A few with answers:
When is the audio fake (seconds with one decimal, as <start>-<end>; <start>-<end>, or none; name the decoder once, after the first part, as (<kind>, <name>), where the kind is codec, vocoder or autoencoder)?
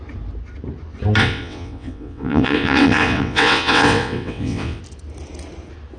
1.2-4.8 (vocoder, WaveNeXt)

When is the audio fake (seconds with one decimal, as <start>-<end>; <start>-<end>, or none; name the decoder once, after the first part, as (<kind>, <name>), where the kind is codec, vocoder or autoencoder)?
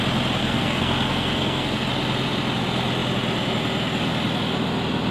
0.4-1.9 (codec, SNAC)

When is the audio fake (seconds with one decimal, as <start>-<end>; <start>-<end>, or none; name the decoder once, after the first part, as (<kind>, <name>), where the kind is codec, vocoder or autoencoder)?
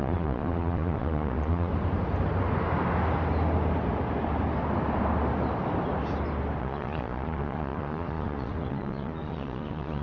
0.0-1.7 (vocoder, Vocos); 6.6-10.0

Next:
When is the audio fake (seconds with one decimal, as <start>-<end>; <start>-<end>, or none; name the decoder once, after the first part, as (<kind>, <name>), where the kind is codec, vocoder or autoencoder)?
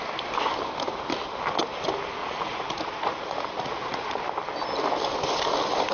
2.2-4.2 (vocoder, Vocos)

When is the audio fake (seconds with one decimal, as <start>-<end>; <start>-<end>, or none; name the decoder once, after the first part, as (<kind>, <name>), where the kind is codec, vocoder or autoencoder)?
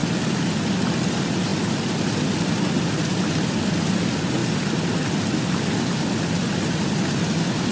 none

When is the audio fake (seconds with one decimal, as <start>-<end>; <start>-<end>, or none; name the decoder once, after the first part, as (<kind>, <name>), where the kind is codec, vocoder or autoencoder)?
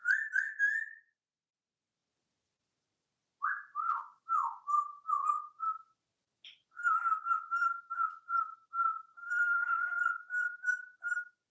7.6-9.7 (vocoder, BigVGAN v2)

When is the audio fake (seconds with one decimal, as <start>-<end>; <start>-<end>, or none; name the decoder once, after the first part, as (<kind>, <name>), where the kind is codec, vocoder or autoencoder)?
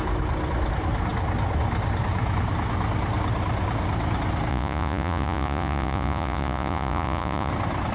4.5-7.5 (vocoder, Vocos)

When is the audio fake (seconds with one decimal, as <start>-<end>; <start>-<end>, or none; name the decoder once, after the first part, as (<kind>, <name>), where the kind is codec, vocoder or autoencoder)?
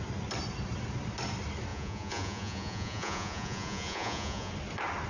1.7-4.5 (vocoder, Vocos)